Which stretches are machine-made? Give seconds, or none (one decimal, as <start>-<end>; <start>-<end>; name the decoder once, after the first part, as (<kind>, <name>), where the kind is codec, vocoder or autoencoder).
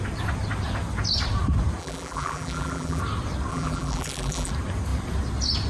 1.8-3.0 (vocoder, BigVGAN v2); 3.5-4.5